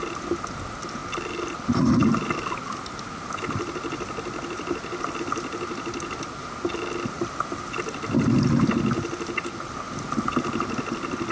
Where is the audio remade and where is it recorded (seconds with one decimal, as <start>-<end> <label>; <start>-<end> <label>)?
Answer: 0.0-11.3 recorded